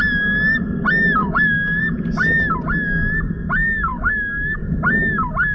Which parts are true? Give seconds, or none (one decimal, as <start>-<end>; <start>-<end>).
0.0-1.2; 1.8-3.9; 4.7-5.5